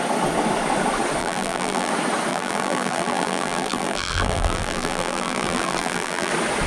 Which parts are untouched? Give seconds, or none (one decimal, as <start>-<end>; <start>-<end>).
0.0-1.2; 1.9-2.3; 6.3-6.7